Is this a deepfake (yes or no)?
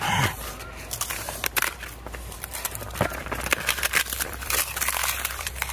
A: yes